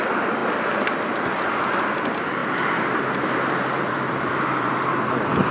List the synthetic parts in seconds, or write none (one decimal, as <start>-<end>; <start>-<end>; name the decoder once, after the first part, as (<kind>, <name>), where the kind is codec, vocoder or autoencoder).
0.0-5.5 (vocoder, BigVGAN v2)